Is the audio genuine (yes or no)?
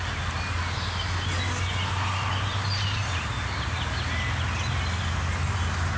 yes